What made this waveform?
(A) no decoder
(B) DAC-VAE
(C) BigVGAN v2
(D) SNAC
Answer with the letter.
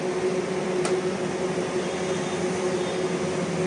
A